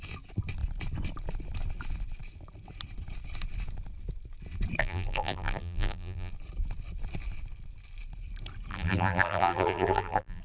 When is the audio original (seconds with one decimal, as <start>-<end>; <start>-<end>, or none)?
0.0-4.8; 6.3-8.7